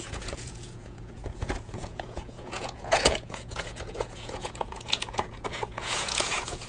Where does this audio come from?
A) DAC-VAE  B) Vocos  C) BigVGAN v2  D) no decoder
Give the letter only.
B